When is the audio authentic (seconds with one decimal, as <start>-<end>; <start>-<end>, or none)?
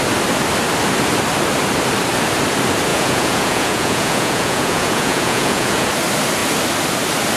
0.0-2.9; 5.9-7.4